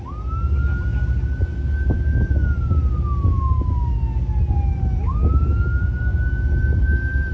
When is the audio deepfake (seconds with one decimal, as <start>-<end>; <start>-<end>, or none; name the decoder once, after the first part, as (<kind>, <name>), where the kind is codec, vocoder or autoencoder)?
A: none